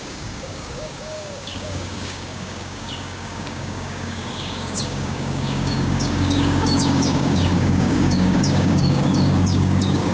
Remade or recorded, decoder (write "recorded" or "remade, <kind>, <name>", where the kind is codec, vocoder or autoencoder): remade, codec, DAC